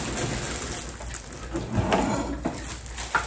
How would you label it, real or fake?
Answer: real